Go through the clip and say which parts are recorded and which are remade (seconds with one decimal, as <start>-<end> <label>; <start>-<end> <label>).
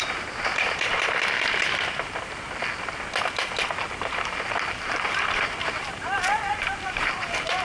0.0-1.6 remade; 1.6-3.9 recorded; 3.9-7.6 remade